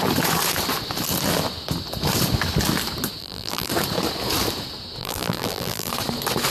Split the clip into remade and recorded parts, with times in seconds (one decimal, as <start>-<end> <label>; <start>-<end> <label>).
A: 0.0-3.2 recorded; 3.2-3.7 remade; 3.7-5.0 recorded; 5.0-5.9 remade; 5.9-6.5 recorded

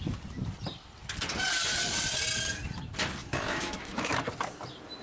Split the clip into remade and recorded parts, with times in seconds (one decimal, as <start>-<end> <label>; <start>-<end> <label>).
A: 0.0-3.2 recorded; 3.2-4.1 remade; 4.1-5.0 recorded

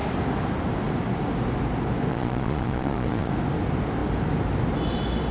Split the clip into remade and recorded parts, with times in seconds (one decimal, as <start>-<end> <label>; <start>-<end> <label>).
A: 0.0-2.1 recorded; 2.1-3.3 remade; 3.3-5.3 recorded

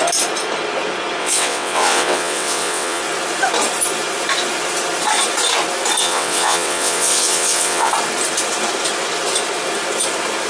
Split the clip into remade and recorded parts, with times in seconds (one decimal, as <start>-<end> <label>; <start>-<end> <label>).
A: 0.0-1.2 recorded; 1.2-3.0 remade; 3.0-6.0 recorded; 6.0-7.9 remade; 7.9-10.5 recorded